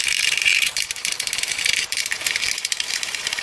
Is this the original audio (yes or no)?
no